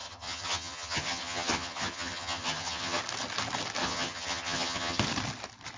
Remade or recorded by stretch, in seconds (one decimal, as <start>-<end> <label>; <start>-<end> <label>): 0.0-3.0 remade; 3.0-3.8 recorded; 3.8-5.0 remade; 5.0-5.8 recorded